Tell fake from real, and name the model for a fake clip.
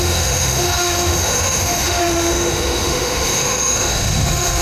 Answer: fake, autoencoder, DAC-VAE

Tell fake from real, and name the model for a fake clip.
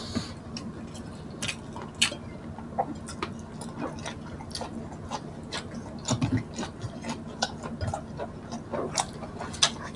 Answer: real